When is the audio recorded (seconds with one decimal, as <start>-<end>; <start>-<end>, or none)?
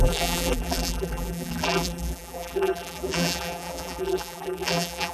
none